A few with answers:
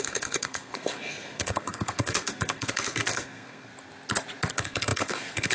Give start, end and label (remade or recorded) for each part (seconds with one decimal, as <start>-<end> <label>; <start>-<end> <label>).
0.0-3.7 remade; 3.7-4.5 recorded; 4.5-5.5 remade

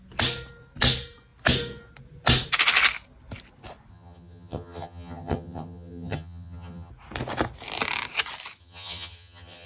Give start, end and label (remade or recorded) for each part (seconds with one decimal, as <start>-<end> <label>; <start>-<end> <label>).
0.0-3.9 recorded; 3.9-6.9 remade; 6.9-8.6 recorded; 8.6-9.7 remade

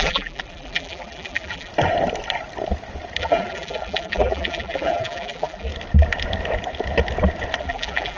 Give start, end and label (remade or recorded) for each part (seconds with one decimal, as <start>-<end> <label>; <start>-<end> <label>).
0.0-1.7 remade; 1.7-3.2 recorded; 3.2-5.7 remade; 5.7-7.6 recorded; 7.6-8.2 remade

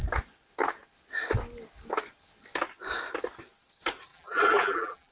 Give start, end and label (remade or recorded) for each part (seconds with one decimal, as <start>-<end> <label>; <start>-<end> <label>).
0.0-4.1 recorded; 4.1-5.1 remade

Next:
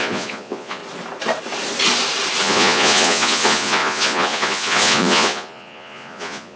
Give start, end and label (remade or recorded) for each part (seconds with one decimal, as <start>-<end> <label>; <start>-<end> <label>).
0.0-0.8 remade; 0.8-2.4 recorded; 2.4-6.6 remade

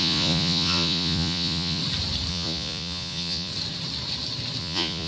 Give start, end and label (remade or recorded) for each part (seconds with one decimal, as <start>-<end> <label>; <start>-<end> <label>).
0.0-1.8 remade; 1.8-2.3 recorded; 2.3-3.5 remade; 3.5-4.6 recorded; 4.6-5.1 remade

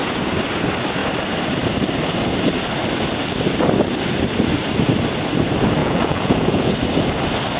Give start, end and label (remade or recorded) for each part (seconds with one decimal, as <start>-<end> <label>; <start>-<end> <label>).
0.0-5.8 recorded; 5.8-6.7 remade; 6.7-7.6 recorded

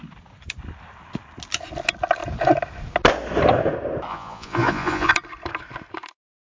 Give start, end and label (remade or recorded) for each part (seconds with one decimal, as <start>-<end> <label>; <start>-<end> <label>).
0.0-4.1 recorded; 4.1-5.1 remade; 5.1-6.5 recorded